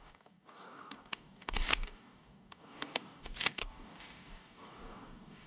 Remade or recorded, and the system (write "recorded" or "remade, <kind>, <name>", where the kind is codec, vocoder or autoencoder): remade, codec, DAC